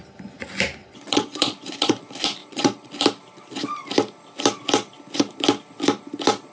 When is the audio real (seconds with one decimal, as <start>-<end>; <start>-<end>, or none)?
0.0-0.8; 2.0-2.4; 2.9-6.5